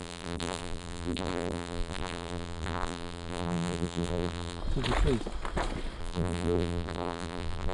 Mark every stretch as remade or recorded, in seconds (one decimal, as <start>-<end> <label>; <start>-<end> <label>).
0.0-4.6 remade; 4.6-6.0 recorded; 6.0-7.7 remade